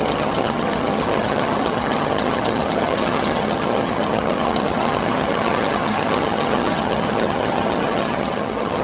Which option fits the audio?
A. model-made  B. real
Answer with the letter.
A